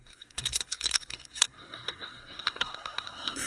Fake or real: fake